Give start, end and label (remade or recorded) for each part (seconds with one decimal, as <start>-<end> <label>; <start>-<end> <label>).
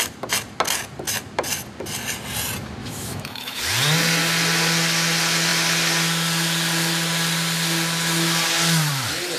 0.0-2.8 recorded; 2.8-3.6 remade; 3.6-9.4 recorded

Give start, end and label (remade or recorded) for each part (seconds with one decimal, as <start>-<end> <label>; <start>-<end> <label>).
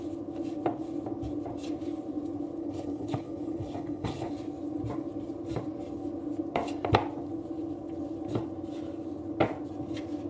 0.0-2.6 recorded; 2.6-4.3 remade; 4.3-10.3 recorded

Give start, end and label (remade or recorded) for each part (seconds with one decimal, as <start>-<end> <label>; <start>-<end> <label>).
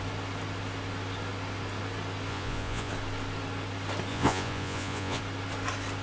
0.0-2.3 recorded; 2.3-2.9 remade; 2.9-4.1 recorded; 4.1-5.2 remade; 5.2-6.0 recorded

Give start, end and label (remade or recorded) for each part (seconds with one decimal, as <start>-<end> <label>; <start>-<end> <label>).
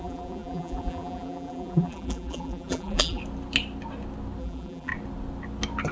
0.0-3.2 remade; 3.2-4.4 recorded; 4.4-4.9 remade; 4.9-5.9 recorded